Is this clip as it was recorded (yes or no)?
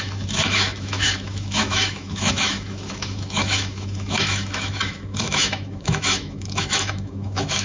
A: no